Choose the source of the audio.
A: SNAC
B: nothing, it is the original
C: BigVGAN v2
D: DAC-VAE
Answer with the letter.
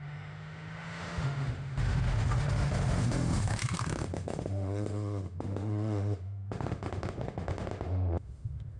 D